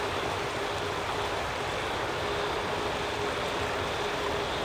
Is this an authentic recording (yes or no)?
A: yes